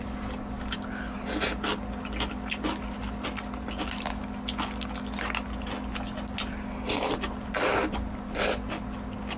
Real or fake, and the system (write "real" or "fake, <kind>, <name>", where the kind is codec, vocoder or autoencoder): real